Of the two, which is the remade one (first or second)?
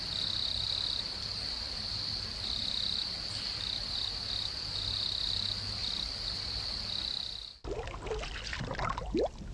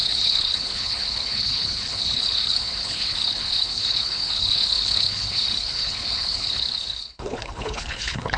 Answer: second